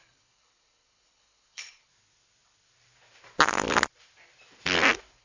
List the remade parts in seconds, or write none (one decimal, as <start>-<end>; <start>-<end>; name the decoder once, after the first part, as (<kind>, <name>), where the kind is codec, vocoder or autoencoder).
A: 0.0-1.9 (codec, HILCodec)